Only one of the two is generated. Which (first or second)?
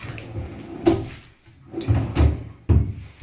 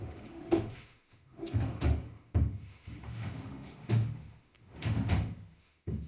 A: second